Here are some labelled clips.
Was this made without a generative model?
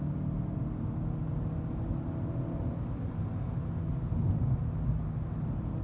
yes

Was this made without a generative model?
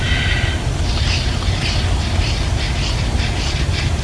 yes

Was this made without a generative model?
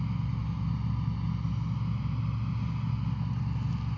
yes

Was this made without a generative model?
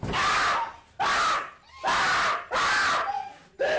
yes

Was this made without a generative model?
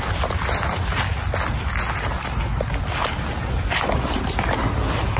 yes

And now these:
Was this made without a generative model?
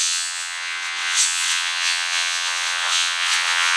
no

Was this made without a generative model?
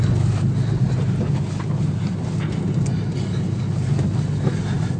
yes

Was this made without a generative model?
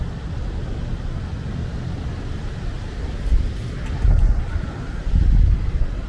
yes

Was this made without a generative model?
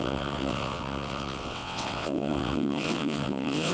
no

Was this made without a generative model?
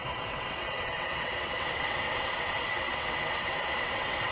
no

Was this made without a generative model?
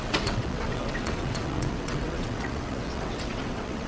no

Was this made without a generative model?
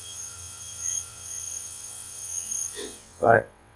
no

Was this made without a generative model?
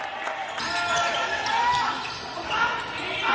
yes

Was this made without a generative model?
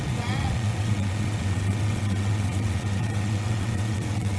no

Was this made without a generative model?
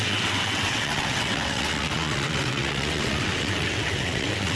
no